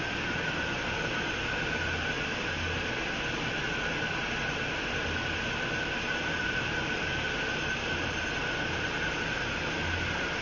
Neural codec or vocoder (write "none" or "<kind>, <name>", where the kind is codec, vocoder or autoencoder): none